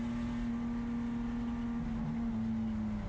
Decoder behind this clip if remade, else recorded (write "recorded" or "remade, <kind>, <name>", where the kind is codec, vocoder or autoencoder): recorded